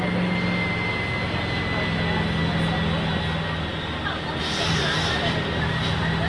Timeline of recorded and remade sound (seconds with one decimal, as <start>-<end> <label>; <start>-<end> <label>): 0.0-6.3 recorded